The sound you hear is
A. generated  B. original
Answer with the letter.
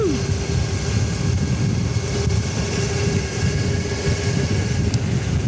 B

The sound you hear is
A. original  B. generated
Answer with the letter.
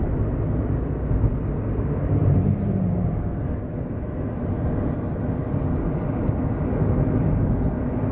A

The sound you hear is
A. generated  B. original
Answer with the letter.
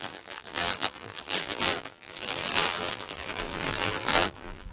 A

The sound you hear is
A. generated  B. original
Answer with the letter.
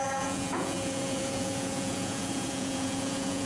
A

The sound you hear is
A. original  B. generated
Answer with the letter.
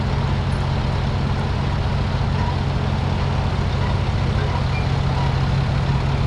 A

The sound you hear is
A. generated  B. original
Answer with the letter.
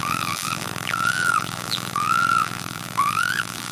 A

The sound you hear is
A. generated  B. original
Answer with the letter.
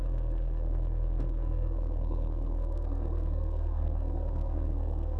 A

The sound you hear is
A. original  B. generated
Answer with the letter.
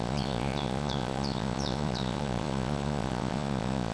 B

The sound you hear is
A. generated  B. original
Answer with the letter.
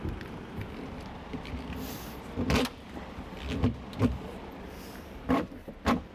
B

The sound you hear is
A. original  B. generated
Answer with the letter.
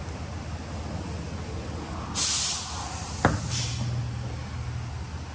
A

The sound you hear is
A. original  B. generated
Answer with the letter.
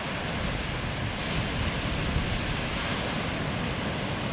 A